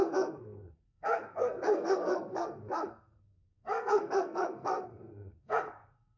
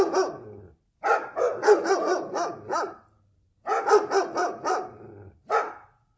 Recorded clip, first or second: second